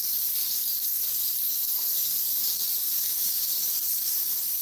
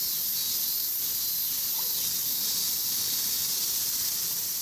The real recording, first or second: second